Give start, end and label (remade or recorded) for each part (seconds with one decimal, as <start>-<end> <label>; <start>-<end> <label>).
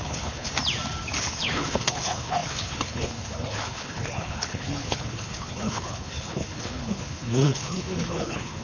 0.0-0.5 remade; 0.5-1.2 recorded; 1.2-8.6 remade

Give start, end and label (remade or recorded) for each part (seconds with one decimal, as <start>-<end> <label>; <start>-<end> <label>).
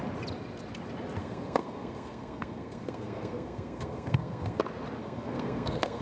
0.0-1.2 recorded; 1.2-4.6 remade; 4.6-5.0 recorded; 5.0-6.0 remade